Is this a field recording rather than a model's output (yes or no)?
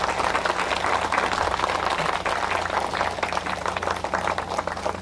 yes